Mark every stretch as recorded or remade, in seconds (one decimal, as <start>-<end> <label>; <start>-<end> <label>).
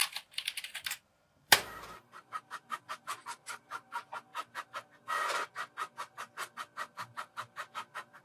0.0-3.5 remade; 3.5-8.2 recorded